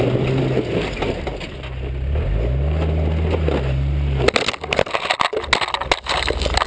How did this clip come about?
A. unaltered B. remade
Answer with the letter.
A